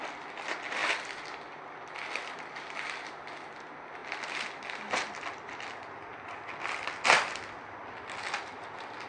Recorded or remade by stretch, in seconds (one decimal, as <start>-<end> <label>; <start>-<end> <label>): 0.0-9.1 recorded